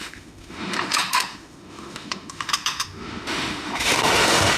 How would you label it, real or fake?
fake